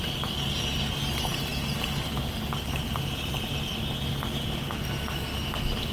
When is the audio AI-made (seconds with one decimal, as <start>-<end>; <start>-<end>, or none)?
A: none